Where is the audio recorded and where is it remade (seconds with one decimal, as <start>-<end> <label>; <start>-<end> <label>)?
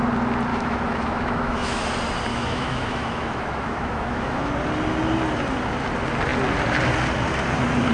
0.0-0.5 recorded; 0.5-1.8 remade; 1.8-2.3 recorded; 2.3-4.5 remade; 4.5-7.9 recorded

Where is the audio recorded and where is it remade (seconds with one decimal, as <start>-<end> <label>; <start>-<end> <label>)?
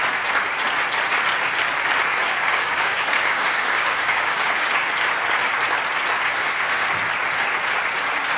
0.0-2.2 recorded; 2.2-4.7 remade; 4.7-6.3 recorded; 6.3-6.9 remade; 6.9-8.4 recorded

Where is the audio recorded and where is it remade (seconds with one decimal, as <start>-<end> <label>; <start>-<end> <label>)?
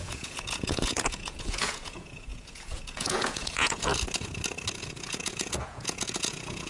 0.0-3.9 remade; 3.9-4.8 recorded; 4.8-6.7 remade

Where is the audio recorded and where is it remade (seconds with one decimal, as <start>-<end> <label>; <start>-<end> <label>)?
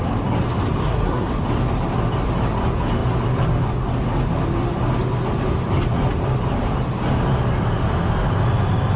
0.0-0.8 recorded; 0.8-1.3 remade; 1.3-9.0 recorded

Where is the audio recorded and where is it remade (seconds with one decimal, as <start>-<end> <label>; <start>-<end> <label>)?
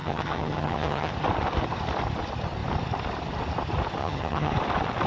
0.0-1.1 remade; 1.1-4.0 recorded; 4.0-4.5 remade; 4.5-5.1 recorded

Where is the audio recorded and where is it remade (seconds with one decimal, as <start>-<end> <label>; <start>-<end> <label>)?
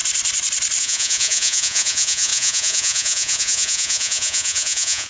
0.0-0.8 recorded; 0.8-5.1 remade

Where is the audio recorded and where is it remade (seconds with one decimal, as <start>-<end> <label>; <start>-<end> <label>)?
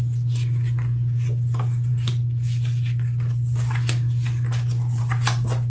0.0-5.7 recorded